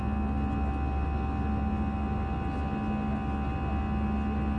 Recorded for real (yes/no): yes